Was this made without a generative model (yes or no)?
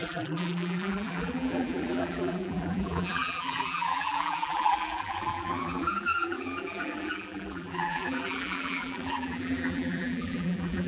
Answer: no